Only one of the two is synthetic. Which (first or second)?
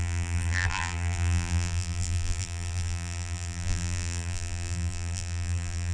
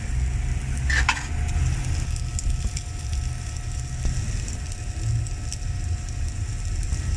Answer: first